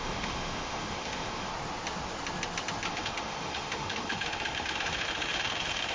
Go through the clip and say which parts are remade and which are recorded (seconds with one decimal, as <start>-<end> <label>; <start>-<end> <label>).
0.0-1.5 remade; 1.5-2.9 recorded; 2.9-5.9 remade